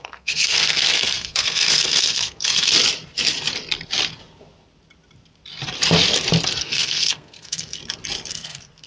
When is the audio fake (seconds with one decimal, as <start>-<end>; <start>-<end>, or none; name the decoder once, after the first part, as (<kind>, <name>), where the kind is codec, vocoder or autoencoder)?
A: 0.0-2.7 (codec, SNAC); 6.6-7.8; 8.3-8.9